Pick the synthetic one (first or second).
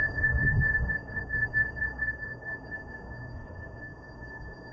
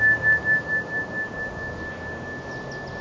first